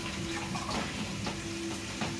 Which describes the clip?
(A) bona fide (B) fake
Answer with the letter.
A